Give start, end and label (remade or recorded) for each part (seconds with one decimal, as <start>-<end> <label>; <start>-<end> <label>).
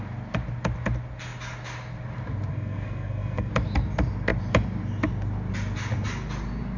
0.0-2.5 recorded; 2.5-3.5 remade; 3.5-6.8 recorded